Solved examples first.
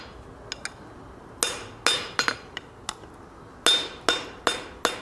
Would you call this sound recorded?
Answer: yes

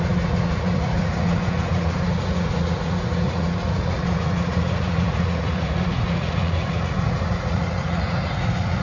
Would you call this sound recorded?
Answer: no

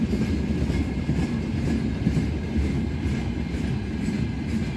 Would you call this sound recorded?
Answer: yes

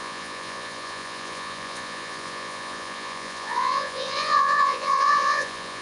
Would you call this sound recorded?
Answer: no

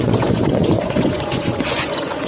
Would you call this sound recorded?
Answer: no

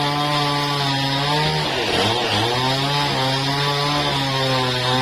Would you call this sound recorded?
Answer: yes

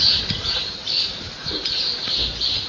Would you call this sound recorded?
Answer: yes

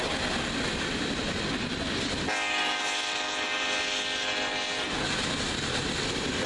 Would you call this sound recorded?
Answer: yes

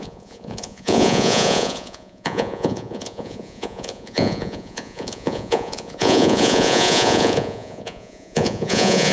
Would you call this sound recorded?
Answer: no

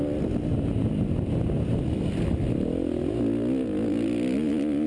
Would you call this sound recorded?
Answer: yes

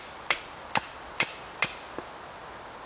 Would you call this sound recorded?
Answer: yes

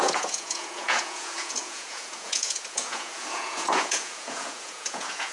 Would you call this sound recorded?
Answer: no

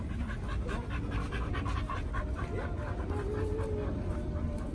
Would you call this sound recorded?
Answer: yes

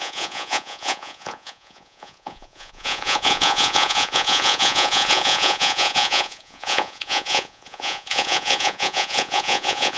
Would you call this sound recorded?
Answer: no